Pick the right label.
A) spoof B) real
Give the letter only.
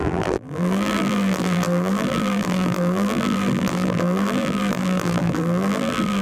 A